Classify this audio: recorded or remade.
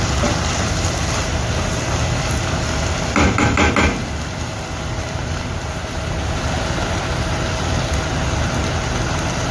recorded